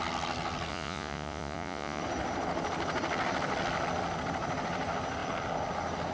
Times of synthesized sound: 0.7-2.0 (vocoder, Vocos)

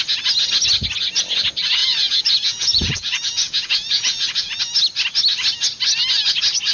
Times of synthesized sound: 1.8-4.6 (vocoder, Vocos)

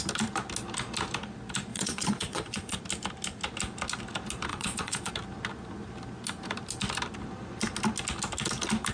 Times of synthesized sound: 1.7-2.8 (vocoder, Vocos); 4.5-5.1

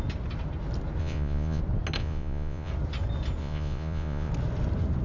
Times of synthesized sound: 1.0-1.6 (vocoder, Vocos); 2.0-2.7; 3.4-4.3

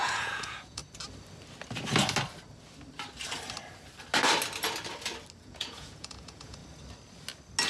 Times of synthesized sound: 0.0-0.8 (vocoder, Vocos); 5.4-6.6

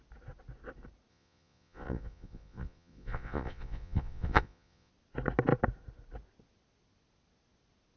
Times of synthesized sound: 1.1-4.9 (vocoder, Vocos)